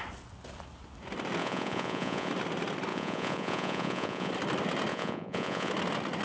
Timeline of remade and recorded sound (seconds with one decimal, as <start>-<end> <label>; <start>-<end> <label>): 0.0-1.4 recorded; 1.4-2.3 remade; 2.3-2.9 recorded; 2.9-4.3 remade; 4.3-4.9 recorded; 4.9-5.7 remade; 5.7-6.2 recorded